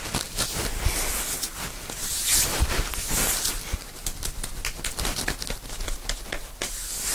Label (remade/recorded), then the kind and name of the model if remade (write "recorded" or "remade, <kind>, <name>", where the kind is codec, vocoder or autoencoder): recorded